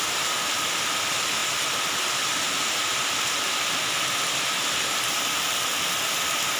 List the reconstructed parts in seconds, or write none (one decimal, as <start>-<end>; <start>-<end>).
none